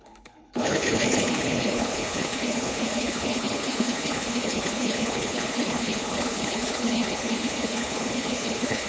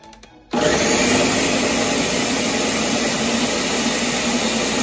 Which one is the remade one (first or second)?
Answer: first